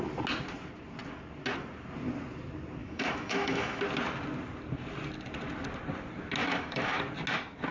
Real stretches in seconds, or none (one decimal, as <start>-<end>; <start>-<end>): 0.0-2.8; 3.8-6.4; 7.0-7.7